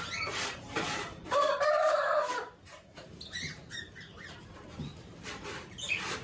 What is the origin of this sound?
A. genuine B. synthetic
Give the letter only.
B